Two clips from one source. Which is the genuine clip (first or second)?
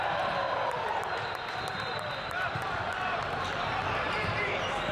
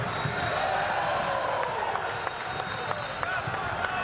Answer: second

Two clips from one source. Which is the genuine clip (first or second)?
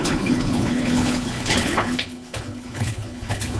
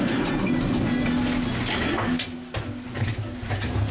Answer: second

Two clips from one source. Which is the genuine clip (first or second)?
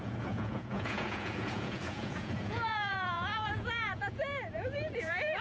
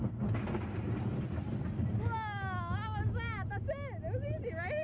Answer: second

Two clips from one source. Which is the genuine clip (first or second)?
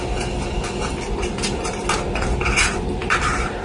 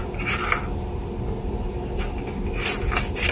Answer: second